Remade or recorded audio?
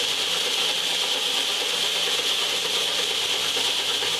remade